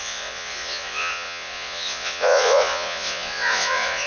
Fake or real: fake